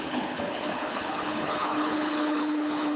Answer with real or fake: fake